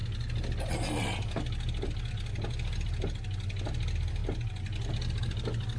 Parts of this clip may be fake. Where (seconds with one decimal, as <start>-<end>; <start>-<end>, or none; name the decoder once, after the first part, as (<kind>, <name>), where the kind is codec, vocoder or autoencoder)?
none